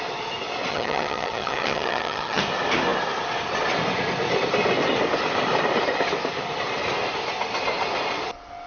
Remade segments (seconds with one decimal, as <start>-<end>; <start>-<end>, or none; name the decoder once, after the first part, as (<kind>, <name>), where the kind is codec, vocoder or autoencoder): 0.7-2.4 (vocoder, HiFi-GAN)